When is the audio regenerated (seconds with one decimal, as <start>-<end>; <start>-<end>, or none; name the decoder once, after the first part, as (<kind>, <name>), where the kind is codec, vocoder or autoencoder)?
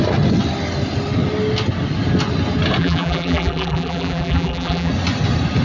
2.8-4.9 (vocoder, BigVGAN v2)